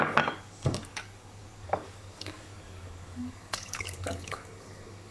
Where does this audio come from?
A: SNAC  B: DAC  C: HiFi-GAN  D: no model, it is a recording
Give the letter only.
B